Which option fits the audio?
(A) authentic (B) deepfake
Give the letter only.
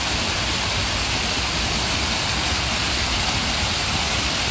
A